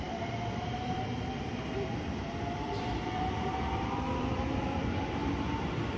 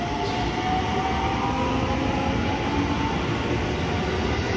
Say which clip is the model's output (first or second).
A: first